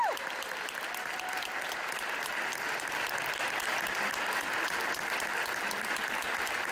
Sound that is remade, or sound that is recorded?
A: recorded